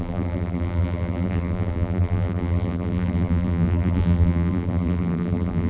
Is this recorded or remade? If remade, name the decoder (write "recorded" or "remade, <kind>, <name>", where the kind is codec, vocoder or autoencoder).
remade, vocoder, BigVGAN v2